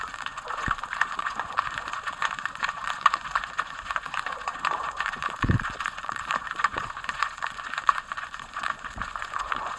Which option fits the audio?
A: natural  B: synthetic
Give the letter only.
B